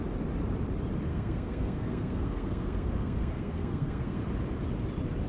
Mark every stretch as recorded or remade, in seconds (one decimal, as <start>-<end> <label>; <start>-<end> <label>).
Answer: 0.0-1.1 recorded; 1.1-4.2 remade; 4.2-5.3 recorded